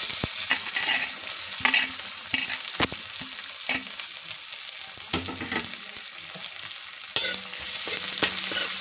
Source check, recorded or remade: recorded